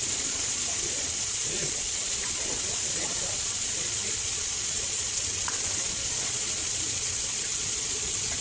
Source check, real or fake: fake